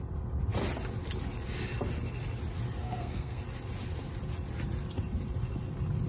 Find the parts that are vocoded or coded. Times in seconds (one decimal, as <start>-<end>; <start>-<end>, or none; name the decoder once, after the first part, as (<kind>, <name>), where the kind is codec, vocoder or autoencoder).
2.8-3.4 (codec, SNAC)